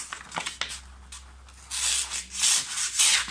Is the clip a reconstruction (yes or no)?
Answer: no